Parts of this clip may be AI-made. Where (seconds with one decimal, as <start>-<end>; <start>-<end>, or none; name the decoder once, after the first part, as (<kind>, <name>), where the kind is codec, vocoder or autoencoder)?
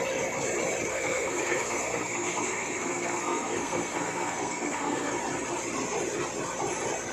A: 0.9-5.2 (codec, SNAC)